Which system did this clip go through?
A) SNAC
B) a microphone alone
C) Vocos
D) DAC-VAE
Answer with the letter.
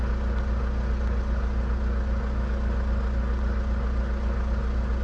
B